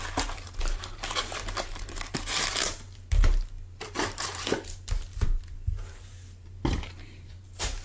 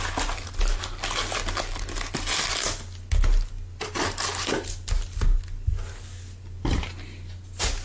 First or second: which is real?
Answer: second